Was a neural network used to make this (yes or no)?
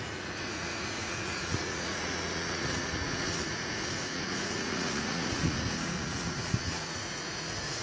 yes